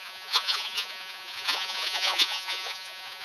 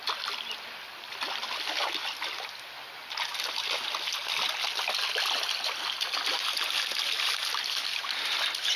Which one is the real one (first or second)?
second